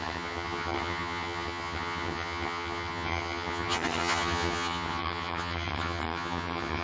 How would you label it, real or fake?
fake